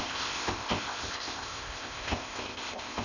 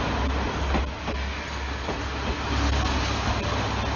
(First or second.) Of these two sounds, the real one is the second